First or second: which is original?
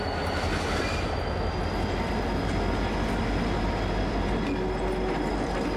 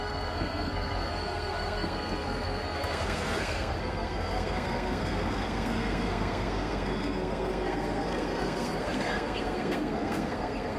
first